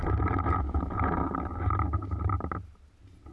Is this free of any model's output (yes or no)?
yes